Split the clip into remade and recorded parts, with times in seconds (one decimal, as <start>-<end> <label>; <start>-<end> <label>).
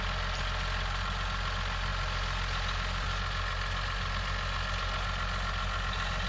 0.0-6.3 recorded